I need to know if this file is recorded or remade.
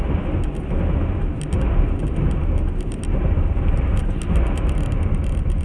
recorded